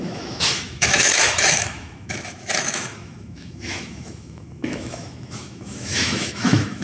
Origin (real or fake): fake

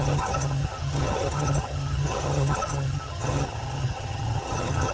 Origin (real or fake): fake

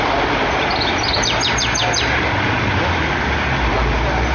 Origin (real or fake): real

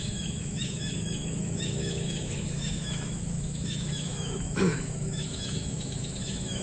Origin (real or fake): fake